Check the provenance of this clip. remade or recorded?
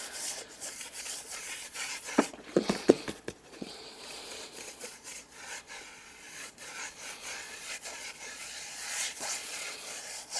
remade